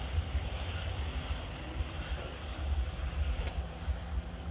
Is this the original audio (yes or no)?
yes